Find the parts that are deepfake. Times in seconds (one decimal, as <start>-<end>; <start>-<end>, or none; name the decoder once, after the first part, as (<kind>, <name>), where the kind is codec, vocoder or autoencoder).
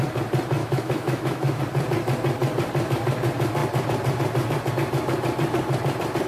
0.6-1.6 (autoencoder, DAC-VAE)